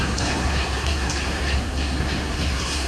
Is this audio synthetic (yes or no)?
yes